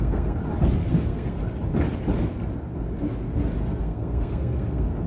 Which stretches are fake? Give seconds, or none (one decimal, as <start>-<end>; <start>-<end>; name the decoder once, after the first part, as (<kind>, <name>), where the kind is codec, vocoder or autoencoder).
0.0-0.4 (codec, SNAC); 0.9-1.4; 3.8-5.1